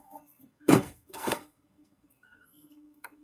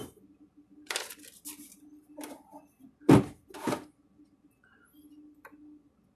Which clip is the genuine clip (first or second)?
second